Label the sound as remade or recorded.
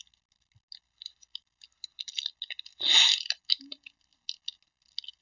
recorded